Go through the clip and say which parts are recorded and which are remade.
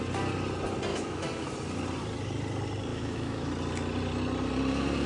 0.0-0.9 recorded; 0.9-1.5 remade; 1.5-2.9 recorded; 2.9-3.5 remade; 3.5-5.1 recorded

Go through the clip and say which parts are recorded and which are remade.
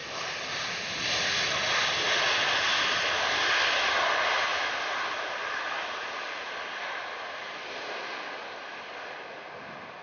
0.0-10.0 recorded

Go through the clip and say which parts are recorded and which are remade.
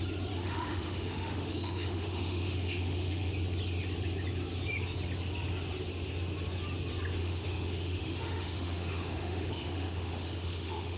0.0-0.4 recorded; 0.4-3.3 remade; 3.3-7.2 recorded; 7.2-11.0 remade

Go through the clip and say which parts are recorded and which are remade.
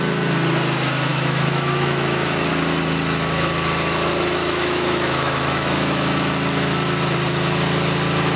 0.0-1.1 recorded; 1.1-2.5 remade; 2.5-4.4 recorded; 4.4-6.3 remade; 6.3-8.4 recorded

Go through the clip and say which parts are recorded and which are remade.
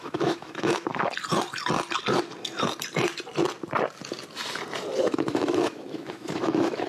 0.0-0.9 remade; 0.9-5.0 recorded; 5.0-6.9 remade